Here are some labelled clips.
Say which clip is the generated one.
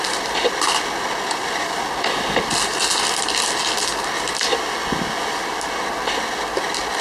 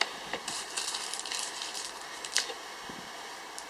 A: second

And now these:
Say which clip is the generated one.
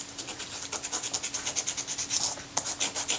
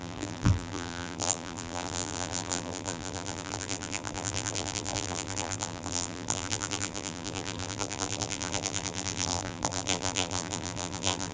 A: second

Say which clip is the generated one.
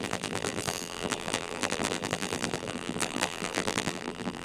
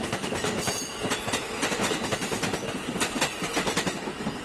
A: first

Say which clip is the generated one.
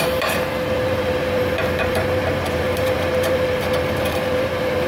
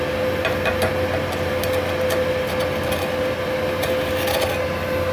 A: first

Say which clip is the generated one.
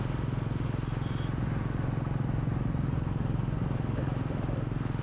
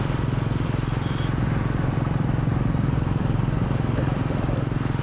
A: second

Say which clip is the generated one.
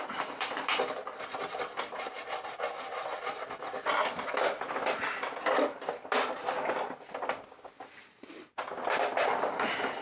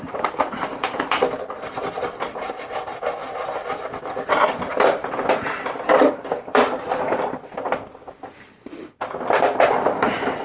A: second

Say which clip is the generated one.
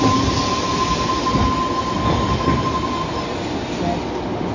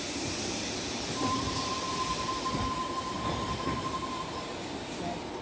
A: second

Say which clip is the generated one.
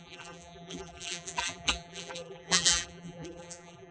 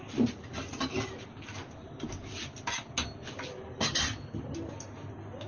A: first